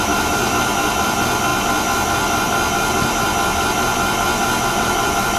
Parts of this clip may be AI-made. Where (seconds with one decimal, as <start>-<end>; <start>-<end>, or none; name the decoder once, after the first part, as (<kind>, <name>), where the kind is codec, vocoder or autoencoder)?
0.0-1.5 (vocoder, BigVGAN v2); 4.7-5.4